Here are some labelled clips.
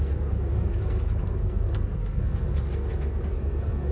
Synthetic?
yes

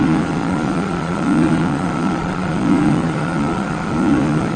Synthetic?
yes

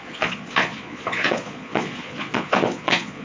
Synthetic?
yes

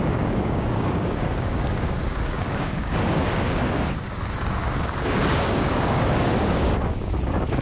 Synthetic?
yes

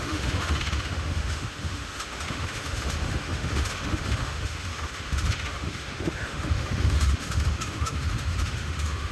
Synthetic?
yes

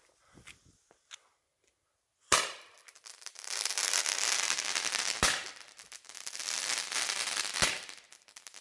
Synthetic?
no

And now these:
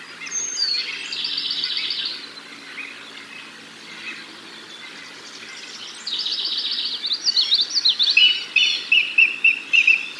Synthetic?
no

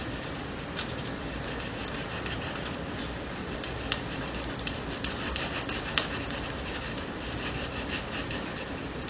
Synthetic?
yes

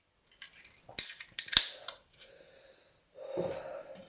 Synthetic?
no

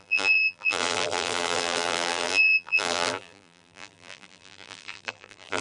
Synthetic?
yes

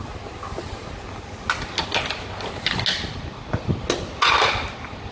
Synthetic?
no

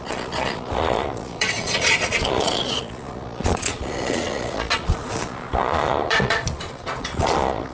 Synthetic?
yes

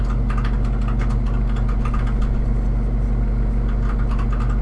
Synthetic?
no